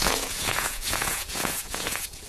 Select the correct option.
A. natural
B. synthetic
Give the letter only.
B